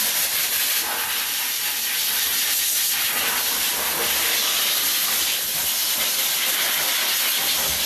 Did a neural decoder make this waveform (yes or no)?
no